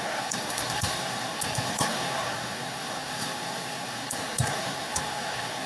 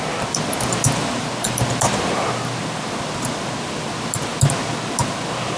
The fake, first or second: first